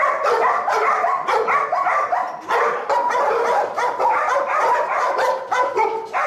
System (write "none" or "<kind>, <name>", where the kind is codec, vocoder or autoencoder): vocoder, BigVGAN v2